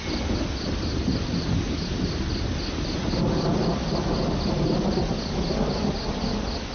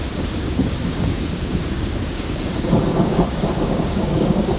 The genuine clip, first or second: first